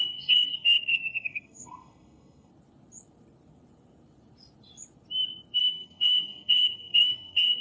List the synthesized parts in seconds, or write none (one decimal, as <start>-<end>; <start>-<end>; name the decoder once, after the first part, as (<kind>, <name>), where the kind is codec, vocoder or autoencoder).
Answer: 0.0-2.5 (codec, SNAC); 5.6-7.6